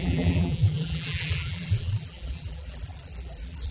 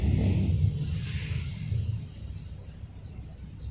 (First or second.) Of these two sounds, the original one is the second